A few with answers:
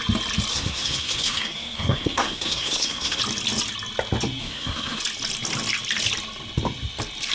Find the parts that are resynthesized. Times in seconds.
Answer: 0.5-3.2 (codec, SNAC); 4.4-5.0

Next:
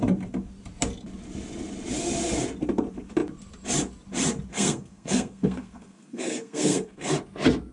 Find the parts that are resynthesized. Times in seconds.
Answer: 4.5-7.1 (codec, SNAC)

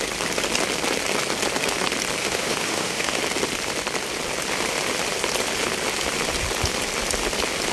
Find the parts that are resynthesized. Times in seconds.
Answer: 2.2-3.2 (autoencoder, DAC-VAE)

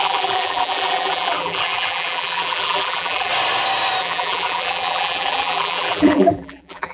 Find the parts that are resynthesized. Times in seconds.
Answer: 0.0-3.3 (vocoder, BigVGAN v2); 4.0-6.9

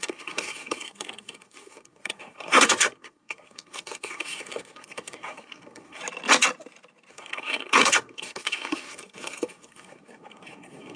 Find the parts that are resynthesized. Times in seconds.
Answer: 0.0-6.0 (codec, SNAC); 7.1-11.0

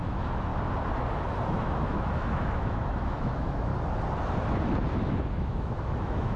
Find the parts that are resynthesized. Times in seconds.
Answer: 0.0-0.5 (autoencoder, DAC-VAE); 1.5-3.7; 4.9-6.4

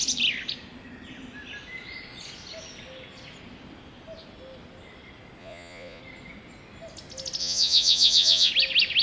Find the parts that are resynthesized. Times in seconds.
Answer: 5.4-6.0 (vocoder, Vocos); 7.4-8.5